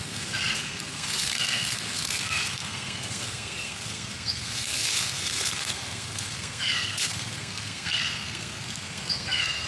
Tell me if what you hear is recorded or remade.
remade